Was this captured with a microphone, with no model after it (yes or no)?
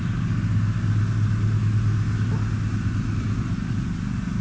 yes